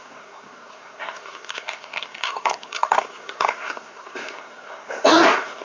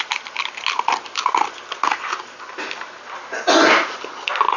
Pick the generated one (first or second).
first